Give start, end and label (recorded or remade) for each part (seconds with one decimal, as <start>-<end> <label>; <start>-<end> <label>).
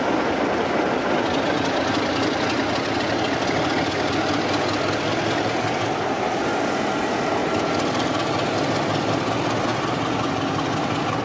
0.0-7.4 recorded; 7.4-8.6 remade; 8.6-11.2 recorded